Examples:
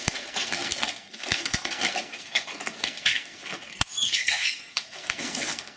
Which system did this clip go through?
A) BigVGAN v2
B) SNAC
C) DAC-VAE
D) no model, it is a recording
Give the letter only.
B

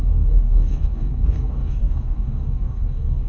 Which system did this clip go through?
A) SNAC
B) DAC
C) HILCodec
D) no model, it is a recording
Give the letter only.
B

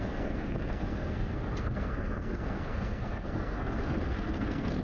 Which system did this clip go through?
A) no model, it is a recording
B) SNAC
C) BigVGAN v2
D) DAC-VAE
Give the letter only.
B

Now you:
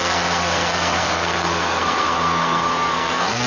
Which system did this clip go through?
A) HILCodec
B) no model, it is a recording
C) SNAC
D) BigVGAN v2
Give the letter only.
C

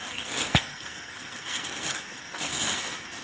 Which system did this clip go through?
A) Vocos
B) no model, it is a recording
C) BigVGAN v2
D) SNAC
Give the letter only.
D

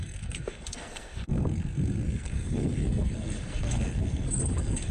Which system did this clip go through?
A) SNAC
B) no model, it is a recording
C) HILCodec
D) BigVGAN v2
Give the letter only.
A